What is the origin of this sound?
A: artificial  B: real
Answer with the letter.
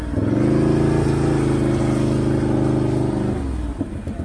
B